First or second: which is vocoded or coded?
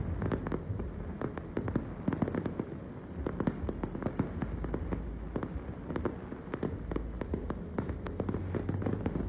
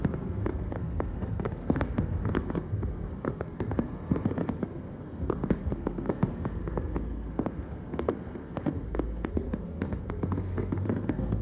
second